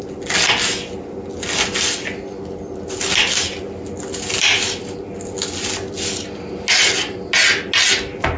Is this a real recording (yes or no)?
yes